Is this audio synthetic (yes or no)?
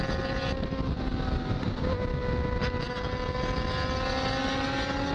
no